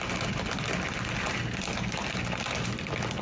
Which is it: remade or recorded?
recorded